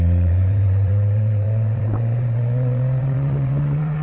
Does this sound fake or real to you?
fake